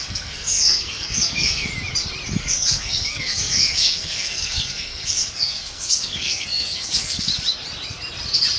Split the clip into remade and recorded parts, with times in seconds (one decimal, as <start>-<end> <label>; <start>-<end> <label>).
0.0-1.7 remade; 1.7-2.4 recorded; 2.4-7.3 remade; 7.3-8.6 recorded